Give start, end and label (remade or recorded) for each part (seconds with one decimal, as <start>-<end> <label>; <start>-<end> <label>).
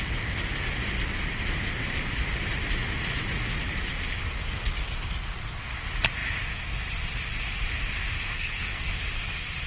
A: 0.0-8.3 recorded; 8.3-8.9 remade; 8.9-9.7 recorded